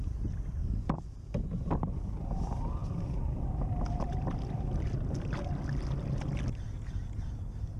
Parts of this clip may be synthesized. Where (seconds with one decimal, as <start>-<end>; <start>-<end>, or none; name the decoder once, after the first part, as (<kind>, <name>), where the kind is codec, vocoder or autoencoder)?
none